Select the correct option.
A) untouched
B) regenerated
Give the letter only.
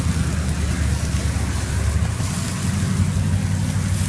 A